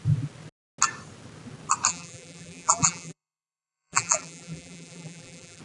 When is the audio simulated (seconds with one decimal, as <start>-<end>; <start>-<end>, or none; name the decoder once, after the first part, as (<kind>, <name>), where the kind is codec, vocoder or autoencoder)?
1.9-5.6 (vocoder, BigVGAN v2)